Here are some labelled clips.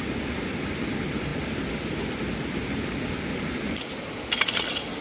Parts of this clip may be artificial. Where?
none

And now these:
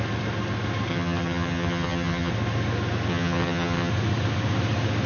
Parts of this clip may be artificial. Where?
0.9-2.3 (vocoder, HiFi-GAN); 3.1-3.9

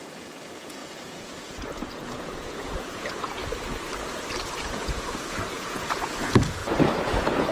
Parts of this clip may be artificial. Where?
0.0-3.4 (vocoder, Vocos); 4.4-6.6; 7.1-7.5

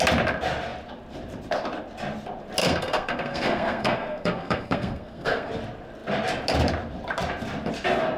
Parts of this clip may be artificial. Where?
2.6-5.5 (codec, SNAC)

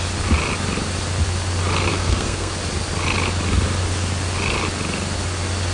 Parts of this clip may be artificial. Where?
1.9-2.5 (codec, SNAC)